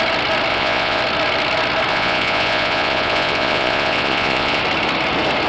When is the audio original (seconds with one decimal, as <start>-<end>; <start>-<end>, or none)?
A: 0.0-0.5; 1.0-1.9; 4.6-5.5